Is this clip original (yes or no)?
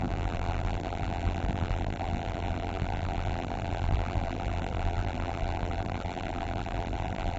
no